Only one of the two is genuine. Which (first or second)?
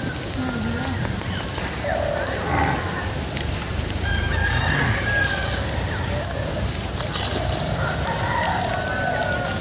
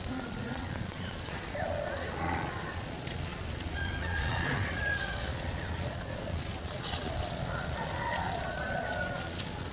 first